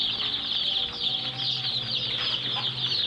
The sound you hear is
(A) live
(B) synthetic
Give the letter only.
A